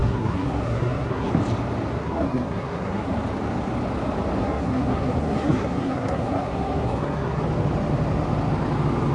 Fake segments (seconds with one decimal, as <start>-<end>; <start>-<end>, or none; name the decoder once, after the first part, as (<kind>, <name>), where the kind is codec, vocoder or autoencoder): 0.0-1.3 (codec, SNAC); 1.9-3.1; 4.4-7.4